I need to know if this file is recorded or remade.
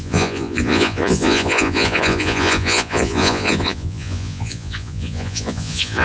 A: remade